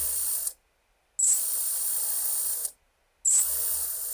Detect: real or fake real